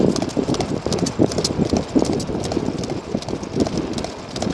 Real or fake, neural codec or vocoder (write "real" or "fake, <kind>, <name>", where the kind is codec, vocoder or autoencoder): real